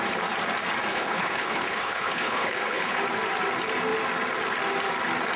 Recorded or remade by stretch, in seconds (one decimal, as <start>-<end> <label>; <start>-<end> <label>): 0.0-0.9 recorded; 0.9-3.0 remade; 3.0-5.4 recorded